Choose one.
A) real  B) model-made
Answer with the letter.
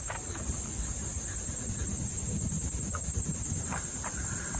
A